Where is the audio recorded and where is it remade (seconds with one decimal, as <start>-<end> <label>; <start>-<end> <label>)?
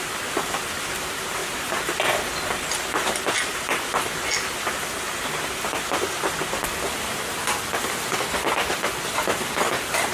0.0-10.1 recorded